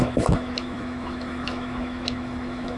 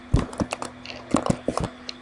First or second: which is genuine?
second